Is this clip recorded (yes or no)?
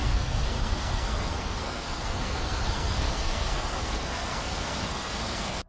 no